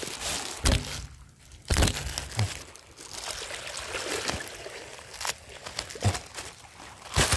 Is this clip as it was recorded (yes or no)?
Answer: yes